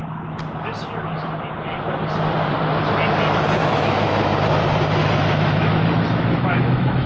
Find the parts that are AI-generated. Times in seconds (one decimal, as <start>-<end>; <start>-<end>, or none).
3.6-4.3; 5.0-7.1